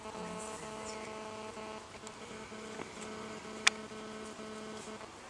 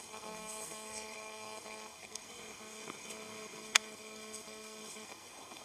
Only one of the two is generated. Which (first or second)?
second